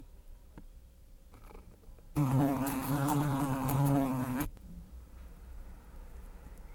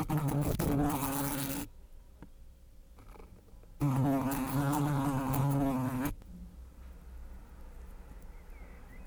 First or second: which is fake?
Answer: first